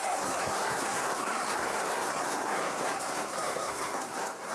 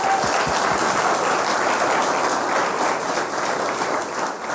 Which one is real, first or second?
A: second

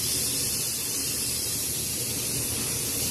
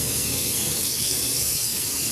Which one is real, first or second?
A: first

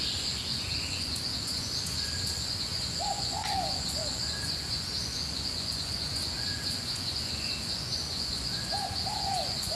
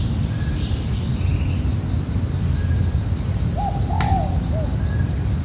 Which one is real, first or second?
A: second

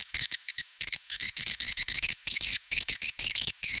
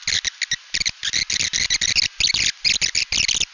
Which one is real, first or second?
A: second